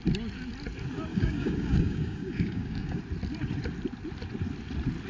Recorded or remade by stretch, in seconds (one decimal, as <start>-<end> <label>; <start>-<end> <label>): 0.0-1.1 recorded; 1.1-3.0 remade; 3.0-5.1 recorded